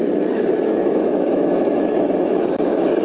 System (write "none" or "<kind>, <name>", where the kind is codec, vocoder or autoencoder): autoencoder, DAC-VAE